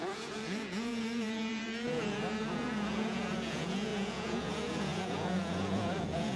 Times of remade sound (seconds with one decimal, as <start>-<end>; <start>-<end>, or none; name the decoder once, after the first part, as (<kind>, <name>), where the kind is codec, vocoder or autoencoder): 0.0-6.4 (vocoder, Vocos)